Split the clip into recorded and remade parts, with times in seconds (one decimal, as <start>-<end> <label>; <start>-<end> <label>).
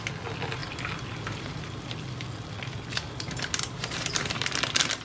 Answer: 0.0-0.6 remade; 0.6-3.6 recorded; 3.6-5.0 remade